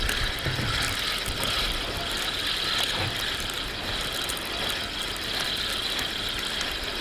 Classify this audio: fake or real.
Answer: real